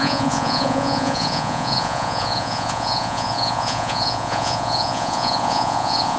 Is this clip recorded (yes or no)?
no